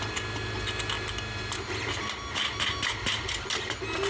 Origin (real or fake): real